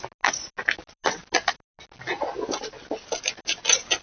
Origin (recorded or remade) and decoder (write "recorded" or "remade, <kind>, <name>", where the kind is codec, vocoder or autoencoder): recorded